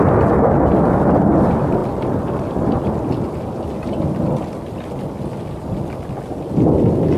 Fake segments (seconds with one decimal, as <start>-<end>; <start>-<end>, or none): none